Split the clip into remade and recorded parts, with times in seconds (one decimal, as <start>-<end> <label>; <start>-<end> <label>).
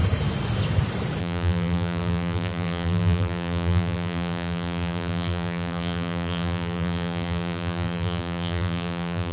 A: 0.0-1.2 recorded; 1.2-9.3 remade